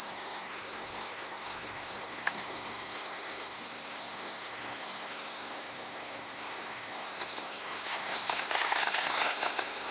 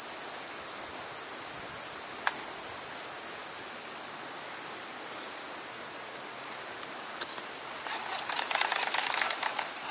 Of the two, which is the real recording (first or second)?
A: second